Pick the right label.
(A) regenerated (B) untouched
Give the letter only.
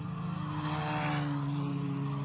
B